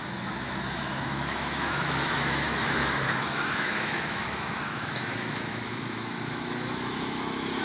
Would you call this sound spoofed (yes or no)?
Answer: yes